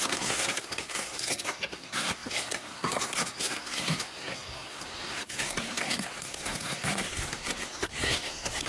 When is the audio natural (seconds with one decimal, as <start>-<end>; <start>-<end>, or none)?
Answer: none